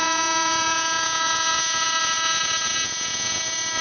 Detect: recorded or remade remade